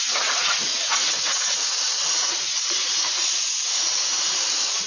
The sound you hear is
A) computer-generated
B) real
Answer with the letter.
A